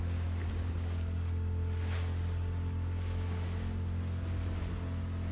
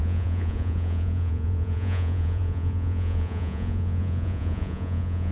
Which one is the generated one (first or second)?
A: second